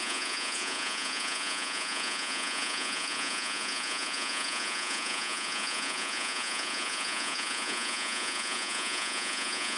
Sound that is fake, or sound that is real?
fake